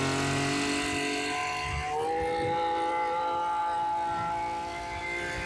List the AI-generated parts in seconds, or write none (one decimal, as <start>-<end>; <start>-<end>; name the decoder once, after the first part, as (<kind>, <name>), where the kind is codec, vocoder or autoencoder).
none